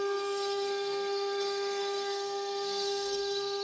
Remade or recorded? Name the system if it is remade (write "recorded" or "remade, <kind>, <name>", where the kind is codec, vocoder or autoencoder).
remade, codec, SNAC